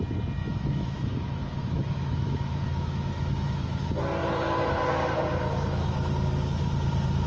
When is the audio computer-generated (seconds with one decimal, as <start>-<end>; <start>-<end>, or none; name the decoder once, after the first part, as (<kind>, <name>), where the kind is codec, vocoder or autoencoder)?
0.4-3.8 (autoencoder, DAC-VAE)